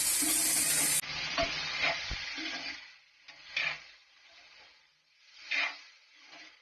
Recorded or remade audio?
recorded